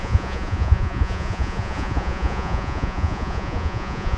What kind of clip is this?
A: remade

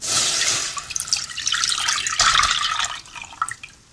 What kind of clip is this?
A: recorded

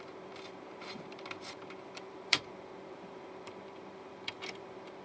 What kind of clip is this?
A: remade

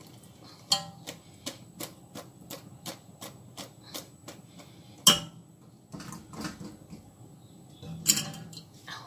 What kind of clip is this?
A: recorded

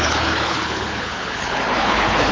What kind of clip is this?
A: remade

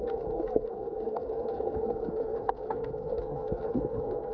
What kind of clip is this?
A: remade